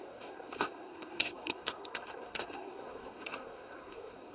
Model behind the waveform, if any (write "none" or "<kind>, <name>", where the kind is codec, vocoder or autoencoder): codec, SNAC